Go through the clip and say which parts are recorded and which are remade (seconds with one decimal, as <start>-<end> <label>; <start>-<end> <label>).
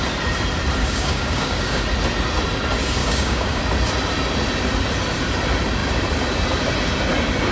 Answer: 0.0-0.8 recorded; 0.8-1.8 remade; 1.8-3.0 recorded; 3.0-3.6 remade; 3.6-7.5 recorded